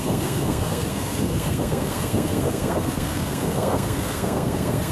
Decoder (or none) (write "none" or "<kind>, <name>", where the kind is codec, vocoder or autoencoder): codec, SNAC